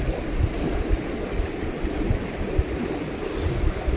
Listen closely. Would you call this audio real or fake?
real